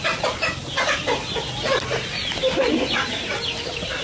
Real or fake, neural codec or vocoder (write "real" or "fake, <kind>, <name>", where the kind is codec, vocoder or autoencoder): real